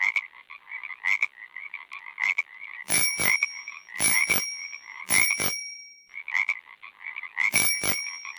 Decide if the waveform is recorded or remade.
remade